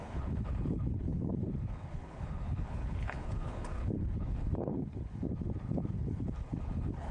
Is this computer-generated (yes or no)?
yes